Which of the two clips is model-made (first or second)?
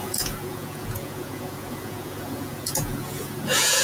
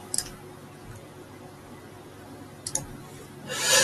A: first